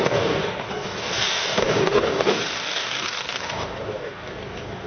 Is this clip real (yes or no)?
no